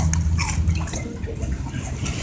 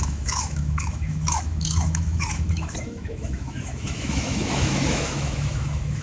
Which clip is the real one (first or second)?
first